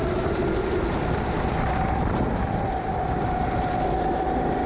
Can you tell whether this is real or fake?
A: real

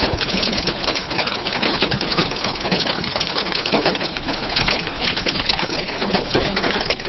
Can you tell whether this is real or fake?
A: fake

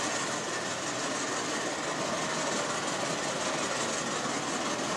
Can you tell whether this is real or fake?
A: real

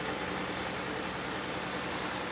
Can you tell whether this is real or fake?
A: real